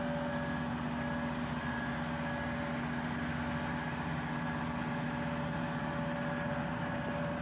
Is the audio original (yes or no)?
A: yes